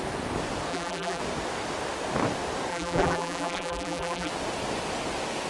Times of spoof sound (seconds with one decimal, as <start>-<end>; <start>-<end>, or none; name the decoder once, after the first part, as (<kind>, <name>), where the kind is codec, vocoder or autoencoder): 0.7-1.2 (vocoder, BigVGAN v2); 2.7-4.3